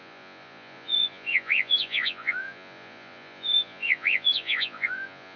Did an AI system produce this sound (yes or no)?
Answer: yes